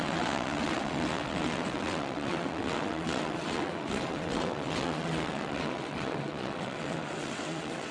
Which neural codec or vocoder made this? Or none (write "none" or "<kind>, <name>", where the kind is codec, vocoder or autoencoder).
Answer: vocoder, WaveNeXt